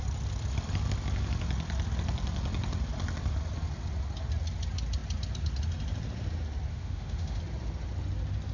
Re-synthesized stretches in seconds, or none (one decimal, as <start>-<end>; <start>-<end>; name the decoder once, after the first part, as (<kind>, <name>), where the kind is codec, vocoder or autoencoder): 6.7-7.4 (autoencoder, DAC-VAE)